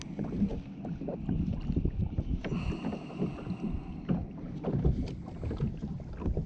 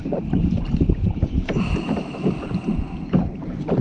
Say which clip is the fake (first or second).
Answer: second